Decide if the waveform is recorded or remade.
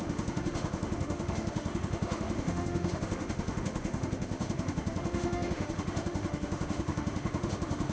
remade